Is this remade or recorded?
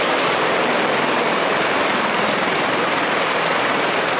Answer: remade